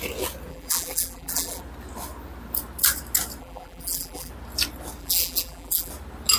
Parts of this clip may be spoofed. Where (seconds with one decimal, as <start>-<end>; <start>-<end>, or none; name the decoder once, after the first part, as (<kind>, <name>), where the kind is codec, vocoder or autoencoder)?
0.5-1.6 (vocoder, BigVGAN v2); 3.4-4.3; 5.0-5.9

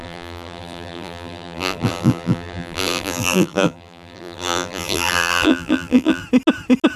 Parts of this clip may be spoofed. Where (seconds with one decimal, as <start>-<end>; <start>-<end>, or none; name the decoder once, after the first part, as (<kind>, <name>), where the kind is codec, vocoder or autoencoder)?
0.0-6.2 (vocoder, BigVGAN v2)

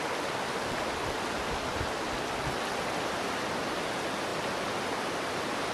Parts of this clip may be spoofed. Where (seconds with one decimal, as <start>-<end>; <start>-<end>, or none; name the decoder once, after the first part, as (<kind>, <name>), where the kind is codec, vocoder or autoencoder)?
none

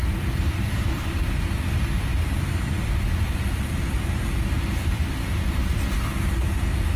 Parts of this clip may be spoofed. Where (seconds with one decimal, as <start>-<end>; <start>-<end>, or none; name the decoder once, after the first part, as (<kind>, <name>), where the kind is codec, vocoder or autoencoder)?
0.0-1.5 (vocoder, BigVGAN v2); 2.1-5.8

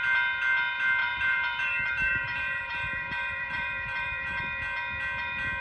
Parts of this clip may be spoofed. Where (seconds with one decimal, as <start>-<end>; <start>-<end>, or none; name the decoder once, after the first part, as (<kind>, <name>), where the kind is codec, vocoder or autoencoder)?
1.0-4.4 (vocoder, BigVGAN v2)